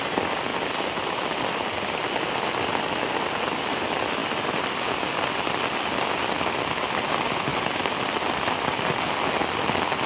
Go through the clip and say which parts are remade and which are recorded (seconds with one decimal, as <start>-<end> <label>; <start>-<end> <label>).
0.0-7.5 recorded; 7.5-8.7 remade; 8.7-10.1 recorded